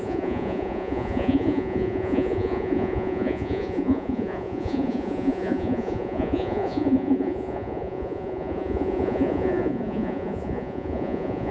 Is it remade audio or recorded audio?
remade